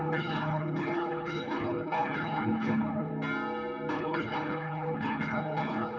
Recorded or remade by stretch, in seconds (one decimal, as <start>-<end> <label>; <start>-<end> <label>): 0.0-3.1 remade; 3.1-3.9 recorded; 3.9-6.0 remade